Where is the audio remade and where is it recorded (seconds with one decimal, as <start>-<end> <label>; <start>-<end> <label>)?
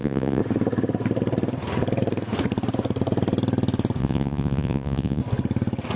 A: 0.0-0.4 remade; 0.4-4.0 recorded; 4.0-5.2 remade; 5.2-6.0 recorded